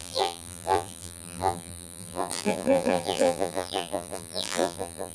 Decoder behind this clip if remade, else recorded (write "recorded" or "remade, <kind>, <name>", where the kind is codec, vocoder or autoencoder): remade, vocoder, BigVGAN v2